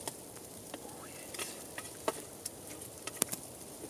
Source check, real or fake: fake